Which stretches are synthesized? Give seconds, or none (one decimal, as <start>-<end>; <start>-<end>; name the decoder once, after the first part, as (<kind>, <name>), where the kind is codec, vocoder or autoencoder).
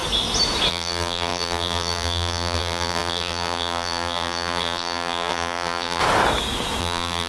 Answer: 0.7-6.0 (vocoder, BigVGAN v2); 6.8-7.3